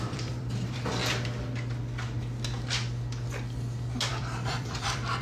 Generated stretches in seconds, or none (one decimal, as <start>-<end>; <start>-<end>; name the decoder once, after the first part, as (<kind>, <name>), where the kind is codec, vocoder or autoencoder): 0.0-1.0 (vocoder, BigVGAN v2); 4.1-5.2